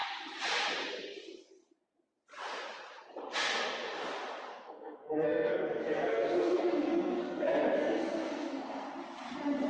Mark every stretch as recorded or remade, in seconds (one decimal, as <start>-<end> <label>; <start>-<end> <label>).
0.0-4.5 recorded; 4.5-8.9 remade; 8.9-9.7 recorded